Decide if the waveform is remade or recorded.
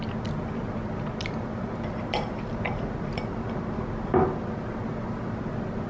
recorded